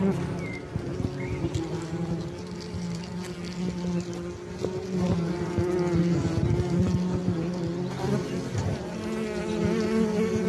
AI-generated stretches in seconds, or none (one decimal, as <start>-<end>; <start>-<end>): none

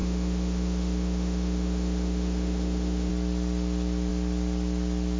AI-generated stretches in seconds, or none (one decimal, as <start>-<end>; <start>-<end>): 0.0-3.1